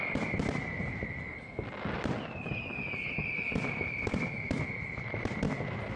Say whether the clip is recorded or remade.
recorded